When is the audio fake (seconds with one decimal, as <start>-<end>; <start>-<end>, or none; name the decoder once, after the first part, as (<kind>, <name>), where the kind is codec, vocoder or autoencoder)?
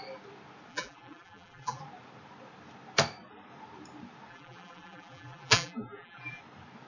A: 0.7-1.8 (vocoder, BigVGAN v2); 4.3-6.4